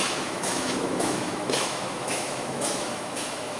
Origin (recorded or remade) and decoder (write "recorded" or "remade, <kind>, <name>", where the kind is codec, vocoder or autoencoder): remade, autoencoder, DAC-VAE